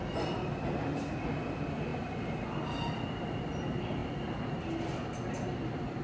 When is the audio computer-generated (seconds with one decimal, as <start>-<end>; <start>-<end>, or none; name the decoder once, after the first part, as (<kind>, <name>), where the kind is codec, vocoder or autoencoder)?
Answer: none

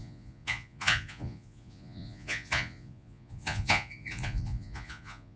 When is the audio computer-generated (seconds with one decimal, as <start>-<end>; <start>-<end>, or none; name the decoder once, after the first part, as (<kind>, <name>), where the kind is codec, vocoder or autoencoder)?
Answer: 0.0-5.4 (vocoder, Vocos)

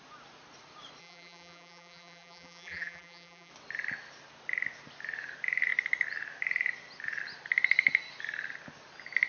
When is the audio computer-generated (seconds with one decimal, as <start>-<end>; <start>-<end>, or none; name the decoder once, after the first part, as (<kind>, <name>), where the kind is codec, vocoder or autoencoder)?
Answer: 1.0-3.5 (vocoder, BigVGAN v2)

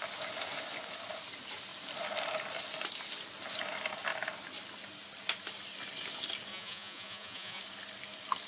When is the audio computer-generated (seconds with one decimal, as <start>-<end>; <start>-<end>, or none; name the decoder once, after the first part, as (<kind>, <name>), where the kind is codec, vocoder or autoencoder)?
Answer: 6.5-7.6 (vocoder, Vocos)

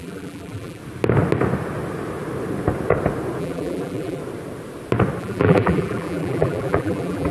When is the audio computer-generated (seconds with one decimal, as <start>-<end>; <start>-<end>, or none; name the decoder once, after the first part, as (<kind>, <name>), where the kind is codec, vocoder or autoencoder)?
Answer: 0.0-0.8 (vocoder, BigVGAN v2); 3.4-4.2; 5.2-7.3